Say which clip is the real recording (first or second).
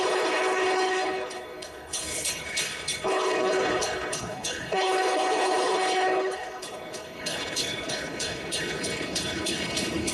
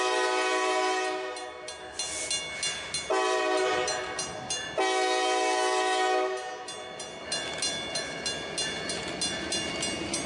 second